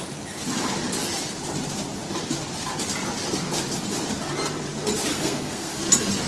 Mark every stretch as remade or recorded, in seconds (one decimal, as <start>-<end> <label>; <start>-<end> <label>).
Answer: 0.0-5.1 recorded; 5.1-5.7 remade; 5.7-6.3 recorded